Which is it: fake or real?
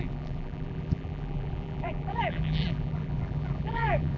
fake